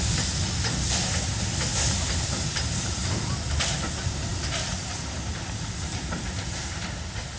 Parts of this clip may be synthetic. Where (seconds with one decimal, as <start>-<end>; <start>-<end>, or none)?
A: none